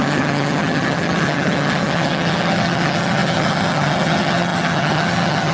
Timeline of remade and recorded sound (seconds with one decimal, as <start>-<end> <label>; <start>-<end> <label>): 0.0-5.5 remade